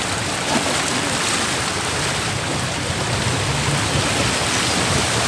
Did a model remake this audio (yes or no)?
no